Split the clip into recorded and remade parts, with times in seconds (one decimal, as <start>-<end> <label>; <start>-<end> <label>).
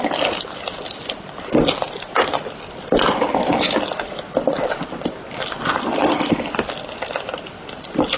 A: 0.0-8.2 recorded